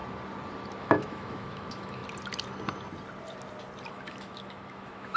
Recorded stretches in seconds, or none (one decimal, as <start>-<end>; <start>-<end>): 0.0-0.8; 2.0-3.9